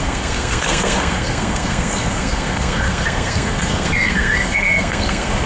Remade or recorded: remade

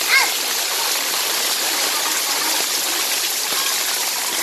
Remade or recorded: recorded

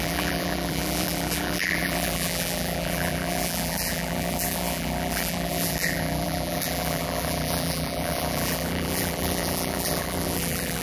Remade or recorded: remade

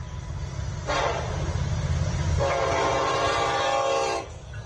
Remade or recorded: recorded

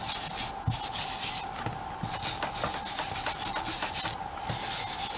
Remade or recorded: recorded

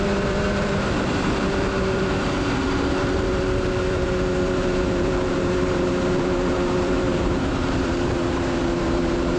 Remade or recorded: remade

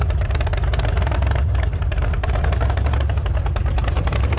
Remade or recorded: remade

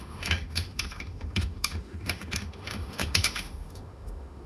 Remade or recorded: remade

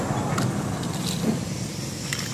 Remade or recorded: recorded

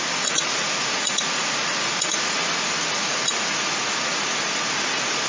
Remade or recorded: remade